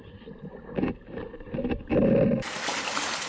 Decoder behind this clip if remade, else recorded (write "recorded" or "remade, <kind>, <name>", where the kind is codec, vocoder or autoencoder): recorded